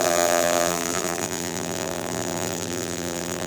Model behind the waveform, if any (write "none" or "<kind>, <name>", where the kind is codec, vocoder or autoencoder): vocoder, BigVGAN v2